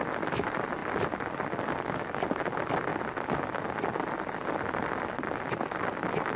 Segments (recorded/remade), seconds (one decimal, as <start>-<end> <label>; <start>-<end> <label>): 0.0-6.4 recorded